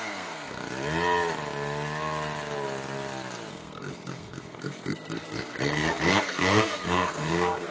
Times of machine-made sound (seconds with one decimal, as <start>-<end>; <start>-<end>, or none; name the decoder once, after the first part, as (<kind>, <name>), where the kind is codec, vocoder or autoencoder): 0.0-0.6 (codec, SNAC); 3.5-7.7